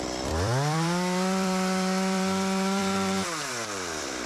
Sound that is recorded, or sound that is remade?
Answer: remade